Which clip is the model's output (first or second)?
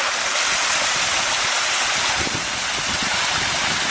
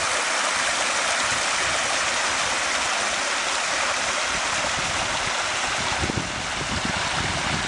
first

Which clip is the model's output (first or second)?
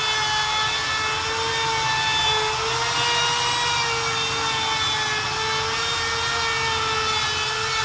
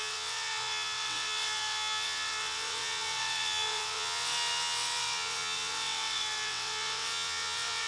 second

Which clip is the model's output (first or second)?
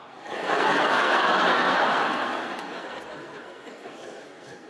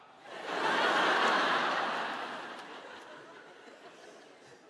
first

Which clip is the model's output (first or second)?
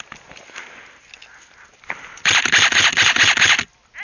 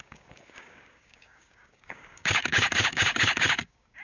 second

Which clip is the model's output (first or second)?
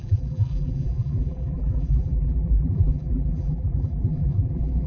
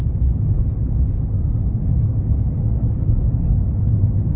first